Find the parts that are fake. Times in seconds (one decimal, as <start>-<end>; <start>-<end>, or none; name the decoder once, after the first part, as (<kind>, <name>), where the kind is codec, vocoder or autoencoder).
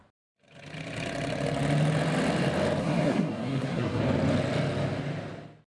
2.8-4.0 (codec, SNAC)